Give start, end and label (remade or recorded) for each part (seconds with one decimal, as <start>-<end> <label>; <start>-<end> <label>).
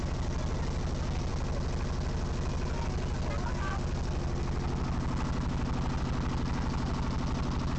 0.0-7.8 recorded